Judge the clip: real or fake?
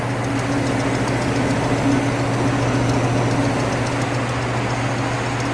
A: real